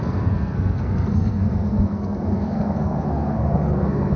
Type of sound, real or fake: fake